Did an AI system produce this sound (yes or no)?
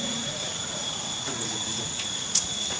yes